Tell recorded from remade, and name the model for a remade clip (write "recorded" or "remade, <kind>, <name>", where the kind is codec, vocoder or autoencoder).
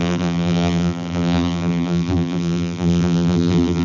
remade, vocoder, BigVGAN v2